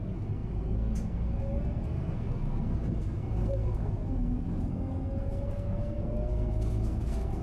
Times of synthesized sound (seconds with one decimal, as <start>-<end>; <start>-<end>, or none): 0.0-7.4

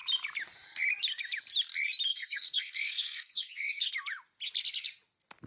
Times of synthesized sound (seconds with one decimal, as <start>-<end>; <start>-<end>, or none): 2.1-3.9